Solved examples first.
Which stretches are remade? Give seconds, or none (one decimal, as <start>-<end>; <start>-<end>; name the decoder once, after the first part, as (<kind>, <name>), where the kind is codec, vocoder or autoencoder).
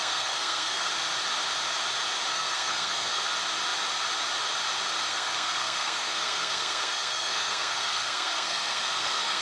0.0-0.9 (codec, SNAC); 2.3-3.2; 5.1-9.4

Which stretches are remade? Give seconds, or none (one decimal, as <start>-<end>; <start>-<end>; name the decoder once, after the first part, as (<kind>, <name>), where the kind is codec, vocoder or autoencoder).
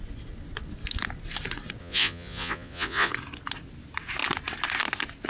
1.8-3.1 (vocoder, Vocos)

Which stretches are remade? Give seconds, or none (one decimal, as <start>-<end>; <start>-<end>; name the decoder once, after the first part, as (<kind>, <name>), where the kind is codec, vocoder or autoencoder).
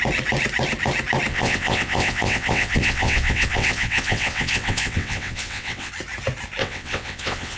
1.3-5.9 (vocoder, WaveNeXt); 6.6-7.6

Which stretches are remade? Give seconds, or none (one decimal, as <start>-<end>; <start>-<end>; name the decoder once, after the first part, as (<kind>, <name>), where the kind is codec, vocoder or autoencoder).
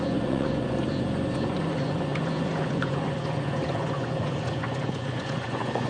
0.0-5.9 (vocoder, Vocos)